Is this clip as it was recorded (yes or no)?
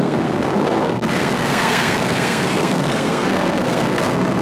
no